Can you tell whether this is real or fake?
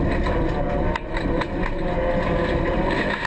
real